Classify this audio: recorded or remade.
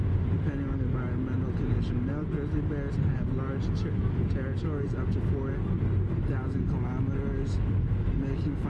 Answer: recorded